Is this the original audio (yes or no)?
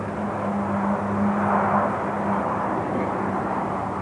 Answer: yes